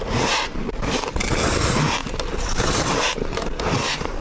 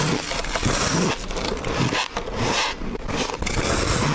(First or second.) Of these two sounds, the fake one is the first